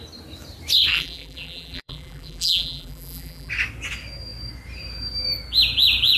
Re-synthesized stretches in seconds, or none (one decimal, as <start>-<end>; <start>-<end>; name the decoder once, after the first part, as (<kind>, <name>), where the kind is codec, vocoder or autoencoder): 0.9-3.5 (vocoder, BigVGAN v2)